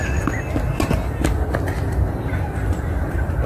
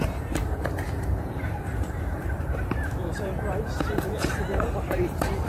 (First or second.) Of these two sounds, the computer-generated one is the second